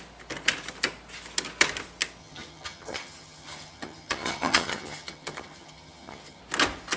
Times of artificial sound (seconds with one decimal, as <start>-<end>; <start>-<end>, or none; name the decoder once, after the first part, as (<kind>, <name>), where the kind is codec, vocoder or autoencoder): 2.2-6.4 (vocoder, HiFi-GAN)